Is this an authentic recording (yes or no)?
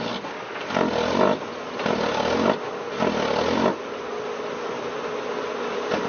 yes